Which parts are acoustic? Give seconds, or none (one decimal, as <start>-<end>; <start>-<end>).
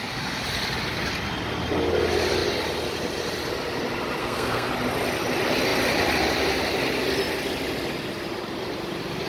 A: 0.0-4.2; 4.7-9.3